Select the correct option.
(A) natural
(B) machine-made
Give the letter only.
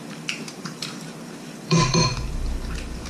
B